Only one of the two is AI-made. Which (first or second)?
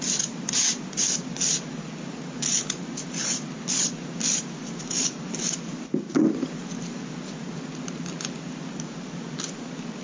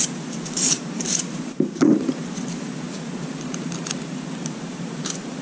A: second